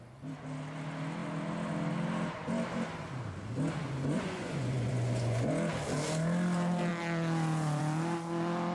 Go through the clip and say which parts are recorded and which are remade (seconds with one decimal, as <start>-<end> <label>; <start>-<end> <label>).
0.0-3.8 recorded; 3.8-5.5 remade; 5.5-8.7 recorded